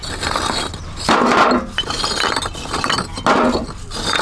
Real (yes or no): yes